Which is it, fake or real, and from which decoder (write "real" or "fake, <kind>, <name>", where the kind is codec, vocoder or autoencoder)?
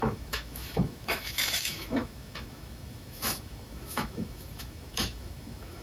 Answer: fake, autoencoder, DAC-VAE